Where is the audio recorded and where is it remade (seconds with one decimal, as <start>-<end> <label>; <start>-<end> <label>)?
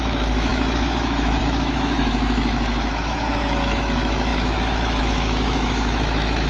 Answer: 0.0-6.5 remade